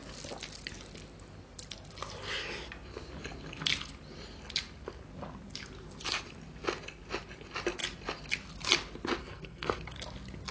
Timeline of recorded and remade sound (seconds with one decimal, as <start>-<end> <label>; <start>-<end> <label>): 0.0-9.2 recorded; 9.2-9.8 remade; 9.8-10.5 recorded